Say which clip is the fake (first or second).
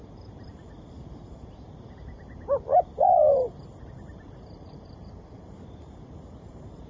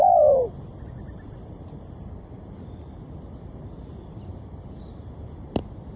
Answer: first